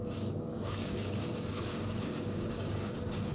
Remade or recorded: remade